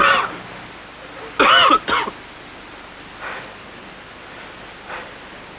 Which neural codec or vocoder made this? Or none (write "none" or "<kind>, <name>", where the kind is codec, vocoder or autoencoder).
none